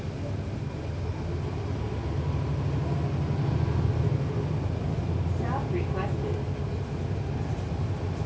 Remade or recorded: recorded